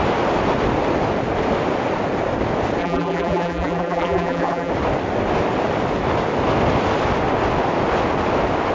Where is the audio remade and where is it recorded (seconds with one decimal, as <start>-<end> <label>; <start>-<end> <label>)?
0.0-2.8 recorded; 2.8-4.7 remade; 4.7-8.7 recorded